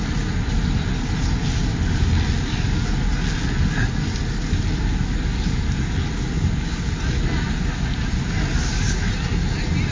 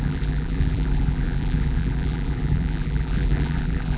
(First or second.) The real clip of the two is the first